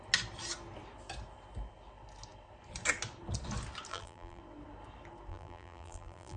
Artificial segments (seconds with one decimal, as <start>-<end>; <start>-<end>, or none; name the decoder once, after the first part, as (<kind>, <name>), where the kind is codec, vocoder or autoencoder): 3.9-4.4 (vocoder, BigVGAN v2); 5.3-6.4